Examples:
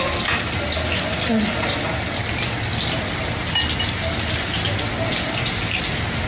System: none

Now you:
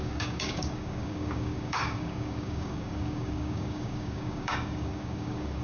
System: codec, DAC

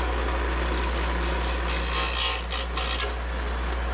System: none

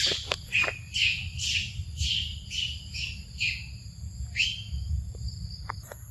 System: none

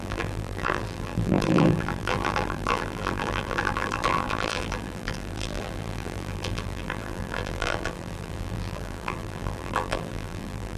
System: vocoder, BigVGAN v2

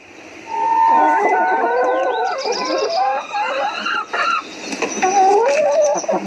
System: none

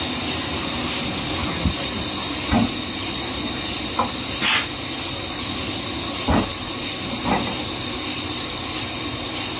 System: none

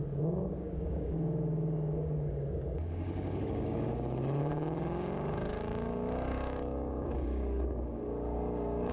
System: codec, DAC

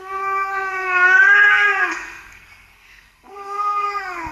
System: codec, SNAC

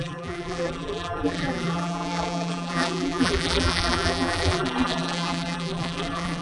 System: vocoder, BigVGAN v2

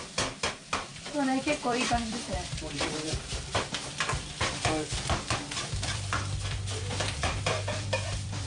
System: vocoder, BigVGAN v2